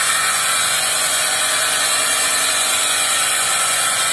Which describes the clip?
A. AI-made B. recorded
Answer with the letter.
A